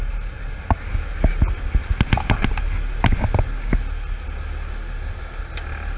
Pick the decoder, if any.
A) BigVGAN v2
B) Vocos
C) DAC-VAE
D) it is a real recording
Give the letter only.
D